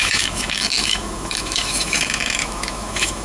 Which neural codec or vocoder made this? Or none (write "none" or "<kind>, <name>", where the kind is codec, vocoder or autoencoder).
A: autoencoder, DAC-VAE